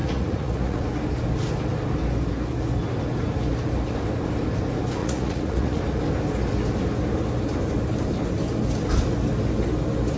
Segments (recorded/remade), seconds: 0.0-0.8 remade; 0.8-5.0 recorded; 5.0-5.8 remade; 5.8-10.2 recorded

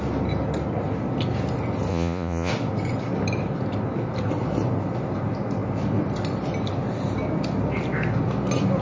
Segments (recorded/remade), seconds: 0.0-1.9 recorded; 1.9-2.5 remade; 2.5-8.8 recorded

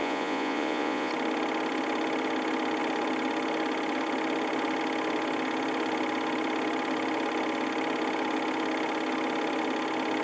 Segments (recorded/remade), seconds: 0.0-1.1 remade; 1.1-10.2 recorded